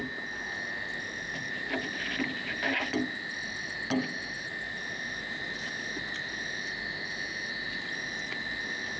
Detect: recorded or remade recorded